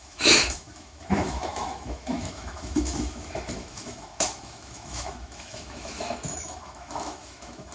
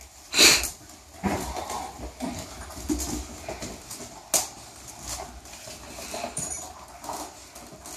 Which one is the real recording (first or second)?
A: second